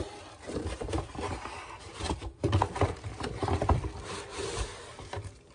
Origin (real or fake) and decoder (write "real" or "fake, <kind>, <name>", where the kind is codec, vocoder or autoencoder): real